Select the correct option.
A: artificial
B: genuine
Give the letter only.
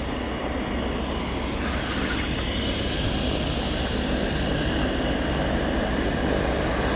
B